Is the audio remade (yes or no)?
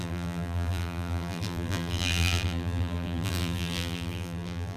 yes